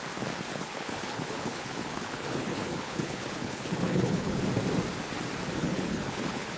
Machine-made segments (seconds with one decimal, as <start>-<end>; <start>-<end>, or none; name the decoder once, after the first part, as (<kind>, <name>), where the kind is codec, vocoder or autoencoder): 0.5-4.4 (codec, HILCodec); 5.6-6.6